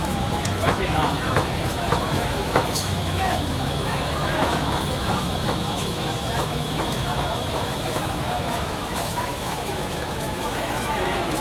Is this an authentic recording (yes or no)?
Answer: no